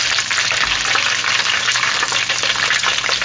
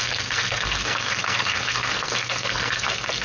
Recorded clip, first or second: first